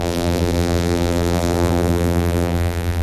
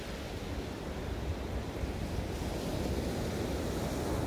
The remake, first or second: first